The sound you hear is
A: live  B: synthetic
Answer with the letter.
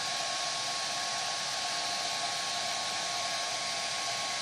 A